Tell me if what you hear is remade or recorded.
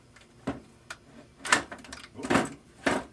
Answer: recorded